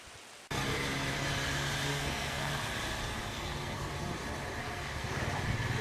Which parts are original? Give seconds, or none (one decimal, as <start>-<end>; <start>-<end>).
0.0-1.9; 2.5-3.3; 3.9-4.6; 5.2-5.8